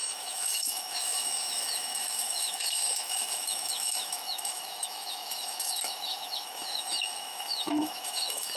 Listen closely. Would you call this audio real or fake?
fake